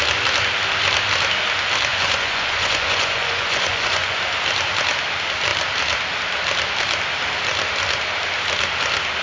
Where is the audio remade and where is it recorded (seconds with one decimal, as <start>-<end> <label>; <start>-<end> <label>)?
0.0-1.9 recorded; 1.9-4.2 remade; 4.2-9.2 recorded